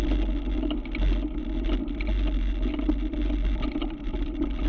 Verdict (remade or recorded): recorded